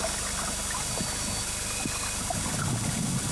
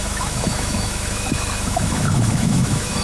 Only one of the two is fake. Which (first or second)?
second